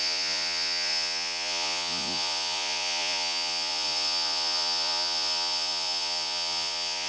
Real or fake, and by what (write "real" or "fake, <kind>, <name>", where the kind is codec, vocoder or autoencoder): fake, vocoder, Vocos